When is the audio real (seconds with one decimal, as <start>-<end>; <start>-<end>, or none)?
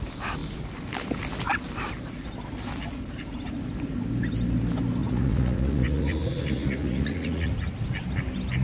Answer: 0.0-5.0; 7.5-8.6